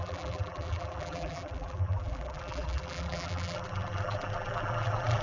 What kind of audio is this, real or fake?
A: fake